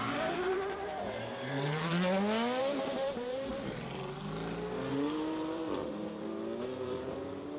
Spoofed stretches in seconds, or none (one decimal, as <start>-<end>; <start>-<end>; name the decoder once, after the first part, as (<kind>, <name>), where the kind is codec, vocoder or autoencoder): 0.0-1.9 (vocoder, BigVGAN v2); 2.6-3.5; 4.9-5.8; 6.6-7.6